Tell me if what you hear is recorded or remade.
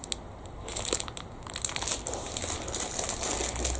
recorded